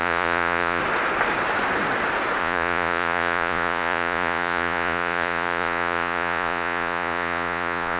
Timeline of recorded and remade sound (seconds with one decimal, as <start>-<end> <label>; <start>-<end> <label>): 0.0-0.8 remade; 0.8-2.4 recorded; 2.4-8.0 remade

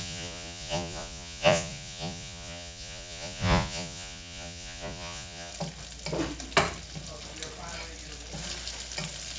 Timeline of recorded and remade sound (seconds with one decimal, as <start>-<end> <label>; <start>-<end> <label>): 0.0-5.5 remade; 5.5-9.4 recorded

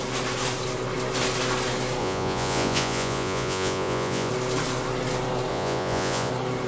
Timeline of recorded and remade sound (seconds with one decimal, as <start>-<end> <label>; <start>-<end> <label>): 0.0-2.0 recorded; 2.0-4.3 remade; 4.3-5.5 recorded; 5.5-6.3 remade; 6.3-6.7 recorded